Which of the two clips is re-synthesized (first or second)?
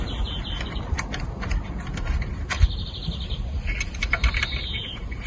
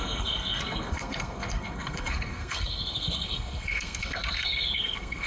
second